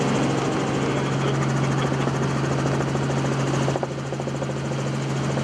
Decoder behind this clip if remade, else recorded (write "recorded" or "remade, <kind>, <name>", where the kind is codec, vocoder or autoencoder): recorded